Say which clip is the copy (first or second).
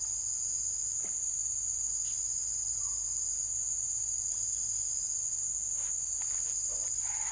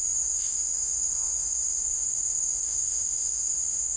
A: second